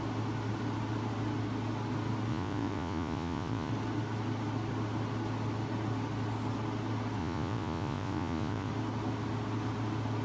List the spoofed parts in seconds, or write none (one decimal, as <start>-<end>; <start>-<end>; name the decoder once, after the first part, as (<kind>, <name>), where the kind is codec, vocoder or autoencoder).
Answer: 2.3-3.7 (vocoder, Vocos); 7.2-8.7